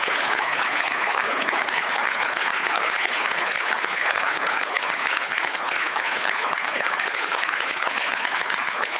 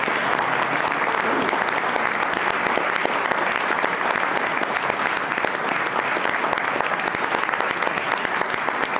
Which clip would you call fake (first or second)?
first